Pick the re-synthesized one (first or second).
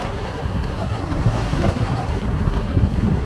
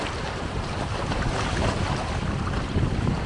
first